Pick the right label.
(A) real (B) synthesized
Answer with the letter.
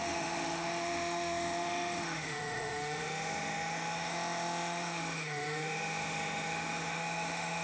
B